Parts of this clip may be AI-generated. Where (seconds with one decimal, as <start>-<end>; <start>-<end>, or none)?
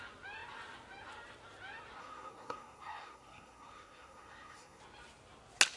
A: 2.0-4.8